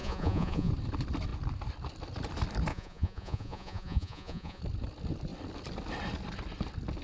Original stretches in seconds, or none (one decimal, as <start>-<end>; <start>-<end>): 0.7-2.7; 4.6-7.0